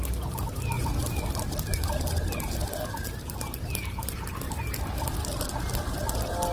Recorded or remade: recorded